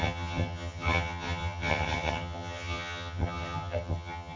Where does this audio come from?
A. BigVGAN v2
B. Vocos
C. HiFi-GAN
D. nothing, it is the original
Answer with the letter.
C